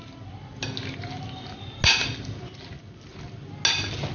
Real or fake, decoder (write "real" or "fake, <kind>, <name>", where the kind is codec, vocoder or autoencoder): real